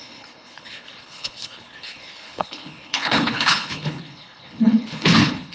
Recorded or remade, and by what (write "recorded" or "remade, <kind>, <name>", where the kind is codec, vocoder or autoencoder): remade, codec, HILCodec